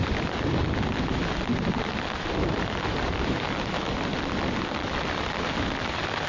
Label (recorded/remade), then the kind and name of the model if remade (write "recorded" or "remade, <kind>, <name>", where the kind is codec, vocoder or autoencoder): remade, vocoder, BigVGAN v2